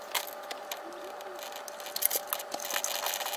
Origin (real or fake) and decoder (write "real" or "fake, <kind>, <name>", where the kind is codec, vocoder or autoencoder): real